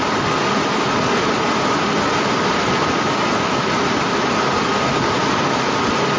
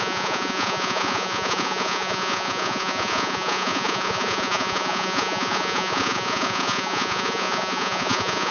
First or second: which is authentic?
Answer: first